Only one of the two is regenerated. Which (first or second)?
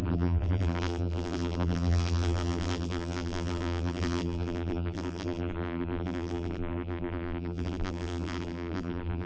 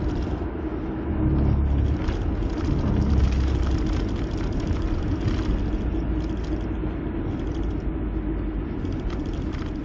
first